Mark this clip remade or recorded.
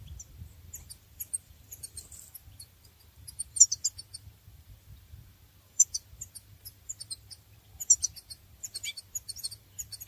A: remade